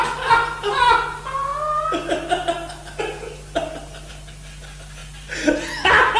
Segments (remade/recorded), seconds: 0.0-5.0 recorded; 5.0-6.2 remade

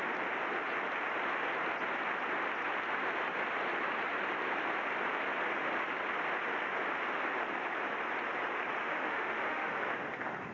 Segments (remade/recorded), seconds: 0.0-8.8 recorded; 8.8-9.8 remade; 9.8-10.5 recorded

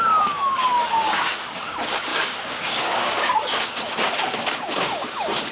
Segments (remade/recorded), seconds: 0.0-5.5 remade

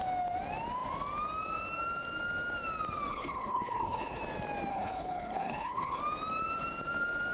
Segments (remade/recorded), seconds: 0.0-3.1 recorded; 3.1-4.2 remade; 4.2-4.7 recorded; 4.7-6.0 remade; 6.0-7.3 recorded

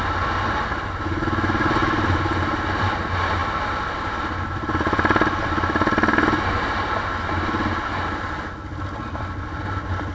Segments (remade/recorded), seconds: 0.0-1.8 recorded; 1.8-2.6 remade; 2.6-10.1 recorded

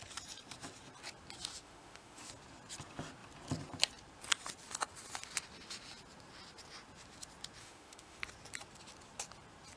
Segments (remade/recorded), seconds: 0.0-1.5 recorded; 1.5-2.3 remade; 2.3-7.6 recorded; 7.6-8.2 remade; 8.2-9.8 recorded

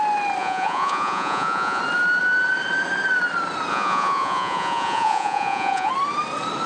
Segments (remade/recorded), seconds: 0.0-0.4 recorded; 0.4-1.8 remade; 1.8-3.7 recorded; 3.7-5.9 remade; 5.9-6.7 recorded